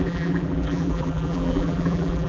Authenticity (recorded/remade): remade